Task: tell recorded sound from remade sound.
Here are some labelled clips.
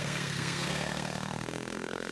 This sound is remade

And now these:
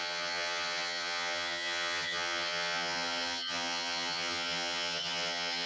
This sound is remade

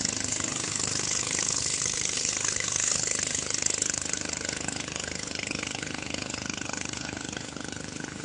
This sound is remade